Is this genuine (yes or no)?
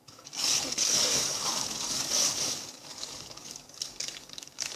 no